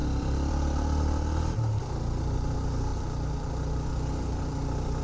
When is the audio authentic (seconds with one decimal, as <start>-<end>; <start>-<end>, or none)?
0.5-2.9; 3.5-5.0